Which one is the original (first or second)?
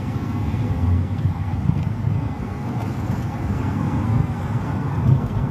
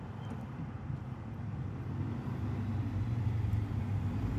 second